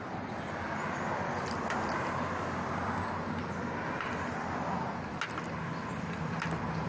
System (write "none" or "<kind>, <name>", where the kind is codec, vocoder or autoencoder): none